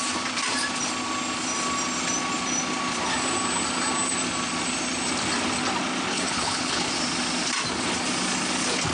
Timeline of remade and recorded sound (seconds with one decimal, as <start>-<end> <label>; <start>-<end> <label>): 0.0-6.1 recorded; 6.1-6.9 remade; 6.9-8.9 recorded